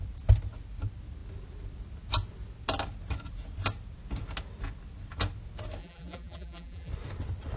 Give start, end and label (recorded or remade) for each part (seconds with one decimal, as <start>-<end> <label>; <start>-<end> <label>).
0.0-5.8 recorded; 5.8-6.9 remade; 6.9-7.6 recorded